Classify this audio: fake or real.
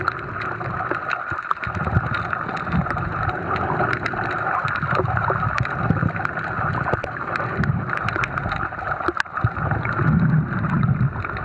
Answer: real